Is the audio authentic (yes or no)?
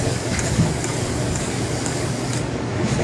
no